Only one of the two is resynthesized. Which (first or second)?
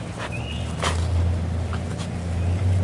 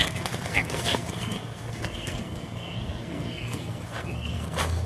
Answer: second